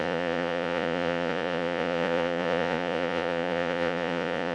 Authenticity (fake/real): fake